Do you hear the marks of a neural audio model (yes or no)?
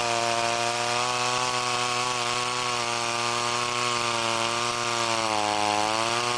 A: no